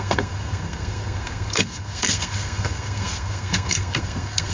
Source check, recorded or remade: remade